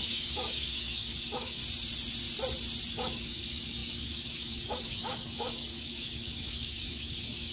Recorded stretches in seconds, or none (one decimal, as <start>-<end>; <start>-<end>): 1.6-2.9